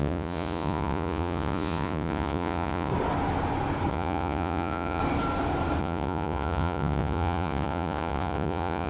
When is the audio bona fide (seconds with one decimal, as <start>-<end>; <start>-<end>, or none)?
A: 2.9-3.9; 5.0-5.8